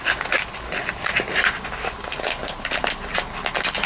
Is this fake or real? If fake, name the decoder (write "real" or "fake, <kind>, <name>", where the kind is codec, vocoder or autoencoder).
real